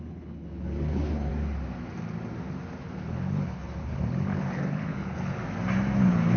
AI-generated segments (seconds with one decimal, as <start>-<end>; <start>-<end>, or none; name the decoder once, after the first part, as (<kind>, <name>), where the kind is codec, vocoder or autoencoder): 0.0-1.3 (codec, HILCodec); 2.8-5.4; 6.0-6.4